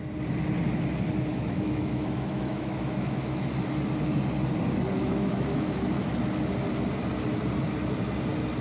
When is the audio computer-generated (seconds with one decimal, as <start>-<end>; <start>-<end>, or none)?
1.3-3.5; 5.0-6.1